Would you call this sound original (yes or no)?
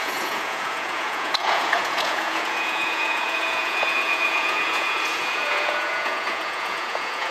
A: no